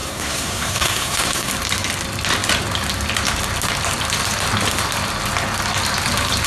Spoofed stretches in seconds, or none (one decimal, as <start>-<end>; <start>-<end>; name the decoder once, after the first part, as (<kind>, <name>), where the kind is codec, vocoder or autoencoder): 0.0-1.5 (codec, SNAC)